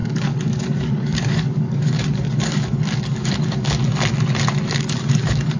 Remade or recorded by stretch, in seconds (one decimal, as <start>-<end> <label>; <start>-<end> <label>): 0.0-3.8 remade; 3.8-5.1 recorded; 5.1-5.6 remade